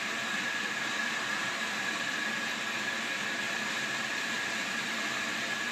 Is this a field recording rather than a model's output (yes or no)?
yes